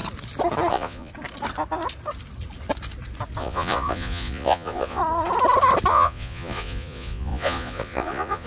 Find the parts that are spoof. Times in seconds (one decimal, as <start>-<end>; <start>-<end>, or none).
0.7-1.1; 3.4-5.0; 5.9-8.5

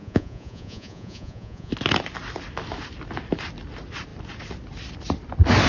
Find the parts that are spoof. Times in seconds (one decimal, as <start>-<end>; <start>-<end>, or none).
0.0-1.7

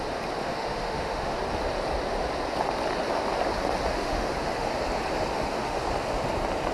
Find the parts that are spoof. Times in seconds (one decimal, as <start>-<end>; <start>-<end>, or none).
0.4-1.4; 3.9-4.7; 5.3-5.8

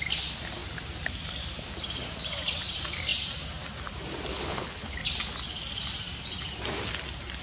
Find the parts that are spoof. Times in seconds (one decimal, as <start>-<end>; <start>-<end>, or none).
4.3-5.0

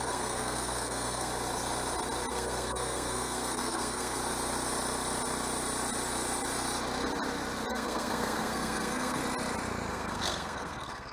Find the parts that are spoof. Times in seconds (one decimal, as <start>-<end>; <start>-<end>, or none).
0.0-1.3; 2.3-4.2; 7.7-9.2; 9.9-11.1

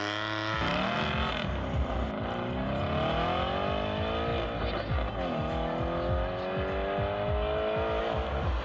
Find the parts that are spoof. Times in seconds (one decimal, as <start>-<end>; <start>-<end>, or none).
none